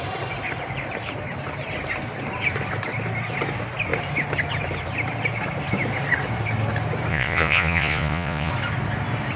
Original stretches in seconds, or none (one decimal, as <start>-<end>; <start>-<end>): 0.0-7.1; 8.5-9.4